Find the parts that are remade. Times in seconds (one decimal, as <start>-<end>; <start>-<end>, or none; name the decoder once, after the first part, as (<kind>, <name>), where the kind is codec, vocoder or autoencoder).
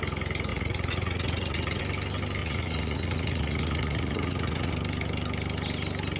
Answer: 0.5-1.8 (vocoder, Vocos); 2.4-4.7